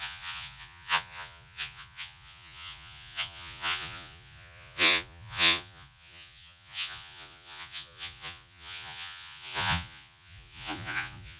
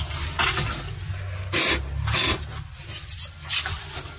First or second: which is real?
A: second